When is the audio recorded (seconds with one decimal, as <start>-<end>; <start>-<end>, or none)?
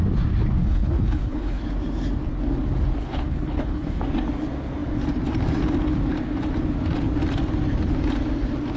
0.0-0.6; 1.6-3.0; 4.0-8.8